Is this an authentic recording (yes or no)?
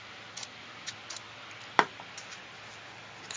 yes